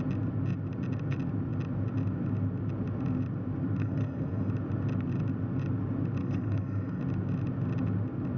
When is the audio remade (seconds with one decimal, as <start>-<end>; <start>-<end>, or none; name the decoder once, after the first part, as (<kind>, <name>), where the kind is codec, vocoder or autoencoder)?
3.8-4.5 (codec, SNAC); 6.2-7.0